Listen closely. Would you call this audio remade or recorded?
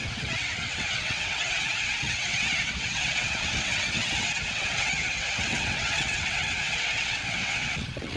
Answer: remade